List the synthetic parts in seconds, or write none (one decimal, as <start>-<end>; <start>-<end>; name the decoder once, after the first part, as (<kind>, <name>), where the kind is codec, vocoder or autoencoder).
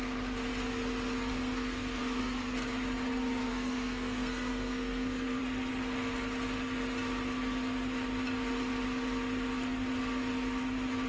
1.3-2.0 (codec, SNAC); 3.5-5.4